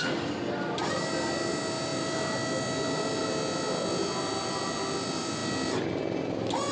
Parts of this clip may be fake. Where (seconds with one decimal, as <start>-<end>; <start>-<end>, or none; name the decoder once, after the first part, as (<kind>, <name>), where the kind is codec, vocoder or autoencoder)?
none